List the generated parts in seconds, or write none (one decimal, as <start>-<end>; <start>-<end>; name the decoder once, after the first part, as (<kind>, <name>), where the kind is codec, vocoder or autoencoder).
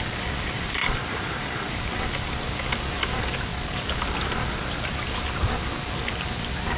0.8-1.7 (vocoder, BigVGAN v2)